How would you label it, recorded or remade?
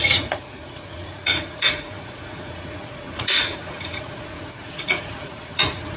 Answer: remade